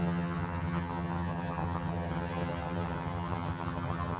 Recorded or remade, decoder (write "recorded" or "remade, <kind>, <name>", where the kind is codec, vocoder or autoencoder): remade, vocoder, HiFi-GAN